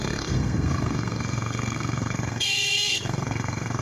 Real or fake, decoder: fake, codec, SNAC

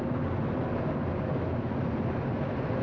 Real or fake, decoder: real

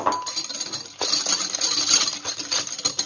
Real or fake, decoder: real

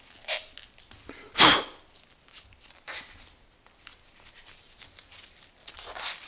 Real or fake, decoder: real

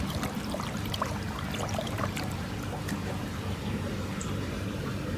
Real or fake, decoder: fake, vocoder, BigVGAN v2